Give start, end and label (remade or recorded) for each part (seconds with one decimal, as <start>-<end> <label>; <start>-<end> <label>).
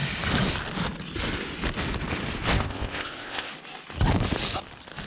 0.0-2.5 recorded; 2.5-3.5 remade; 3.5-5.1 recorded